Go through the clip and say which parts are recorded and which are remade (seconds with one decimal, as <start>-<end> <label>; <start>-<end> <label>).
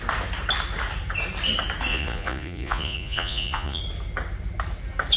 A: 0.0-1.9 recorded; 1.9-3.8 remade; 3.8-5.2 recorded